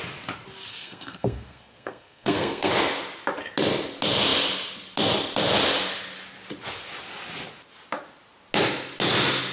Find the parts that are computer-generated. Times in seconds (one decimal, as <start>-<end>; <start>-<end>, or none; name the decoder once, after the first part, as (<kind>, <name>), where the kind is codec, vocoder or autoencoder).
0.7-2.7 (codec, SNAC)